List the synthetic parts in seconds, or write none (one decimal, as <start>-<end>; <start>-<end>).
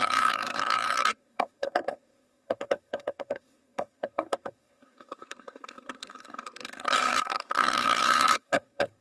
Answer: 0.0-9.0